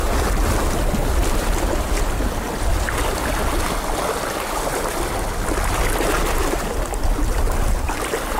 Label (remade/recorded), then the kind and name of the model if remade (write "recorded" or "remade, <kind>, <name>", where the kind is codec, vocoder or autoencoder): recorded